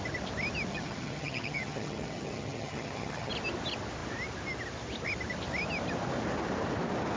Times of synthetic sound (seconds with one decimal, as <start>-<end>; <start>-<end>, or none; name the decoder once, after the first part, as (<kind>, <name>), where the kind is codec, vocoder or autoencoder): 0.7-3.3 (vocoder, HiFi-GAN)